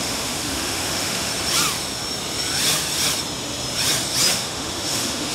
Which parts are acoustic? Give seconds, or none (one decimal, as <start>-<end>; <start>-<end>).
1.3-4.3